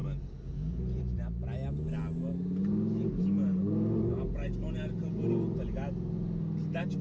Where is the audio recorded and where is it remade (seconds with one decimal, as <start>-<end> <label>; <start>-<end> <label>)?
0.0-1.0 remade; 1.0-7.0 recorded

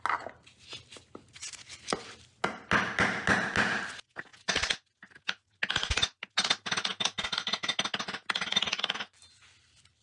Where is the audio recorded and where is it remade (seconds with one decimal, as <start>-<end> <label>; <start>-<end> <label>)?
0.0-10.0 recorded

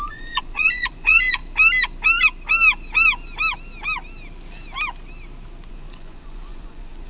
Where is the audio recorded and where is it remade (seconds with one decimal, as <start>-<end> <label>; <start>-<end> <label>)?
0.0-1.4 remade; 1.4-5.7 recorded; 5.7-7.1 remade